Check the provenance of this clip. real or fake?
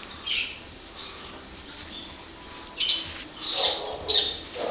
real